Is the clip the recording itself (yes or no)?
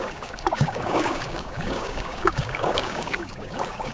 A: no